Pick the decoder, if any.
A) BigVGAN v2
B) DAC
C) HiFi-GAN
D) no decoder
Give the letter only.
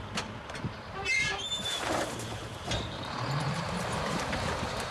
A